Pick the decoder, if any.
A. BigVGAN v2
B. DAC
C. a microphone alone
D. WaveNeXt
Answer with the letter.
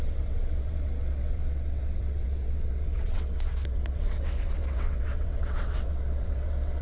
D